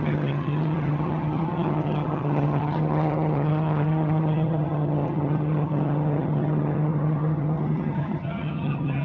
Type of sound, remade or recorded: remade